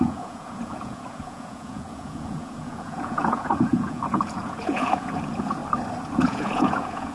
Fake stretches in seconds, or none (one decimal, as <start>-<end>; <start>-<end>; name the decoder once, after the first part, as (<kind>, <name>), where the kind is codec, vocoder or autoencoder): 0.0-5.6 (vocoder, Vocos); 6.1-7.1